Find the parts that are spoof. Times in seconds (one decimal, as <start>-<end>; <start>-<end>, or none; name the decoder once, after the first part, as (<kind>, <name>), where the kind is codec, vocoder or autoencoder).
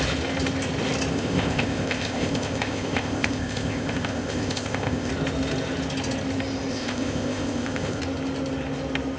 1.1-5.1 (codec, ZipCodec); 6.7-8.0